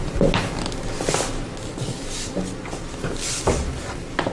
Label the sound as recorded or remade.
recorded